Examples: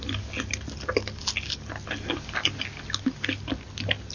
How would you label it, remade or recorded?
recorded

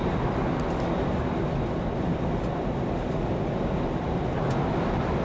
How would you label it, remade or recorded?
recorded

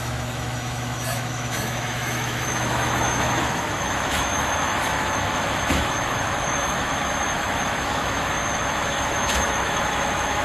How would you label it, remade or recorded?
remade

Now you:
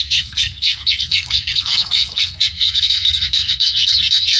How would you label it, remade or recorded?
remade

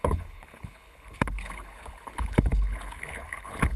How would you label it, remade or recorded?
remade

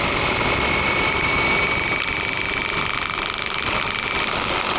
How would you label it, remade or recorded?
recorded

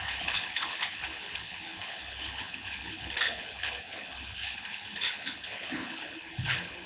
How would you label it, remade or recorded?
remade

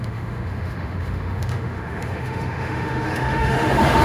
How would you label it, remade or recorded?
remade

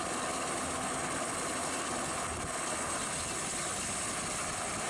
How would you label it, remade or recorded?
recorded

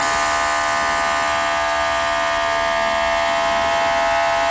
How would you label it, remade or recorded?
recorded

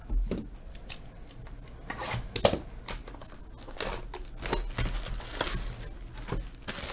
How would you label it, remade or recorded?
recorded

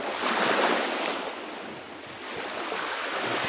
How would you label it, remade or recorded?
recorded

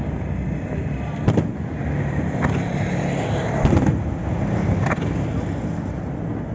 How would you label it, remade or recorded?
recorded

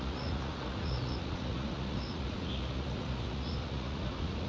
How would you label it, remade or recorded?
remade